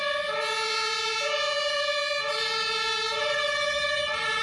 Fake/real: real